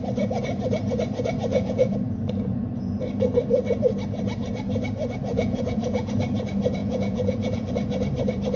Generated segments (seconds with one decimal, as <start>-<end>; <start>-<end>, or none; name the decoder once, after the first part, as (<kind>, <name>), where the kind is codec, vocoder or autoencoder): 1.5-3.0 (vocoder, Vocos); 5.3-6.1; 6.8-7.7